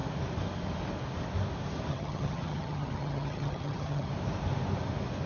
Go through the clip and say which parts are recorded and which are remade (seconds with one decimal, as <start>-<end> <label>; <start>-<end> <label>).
0.0-1.9 recorded; 1.9-4.1 remade; 4.1-5.3 recorded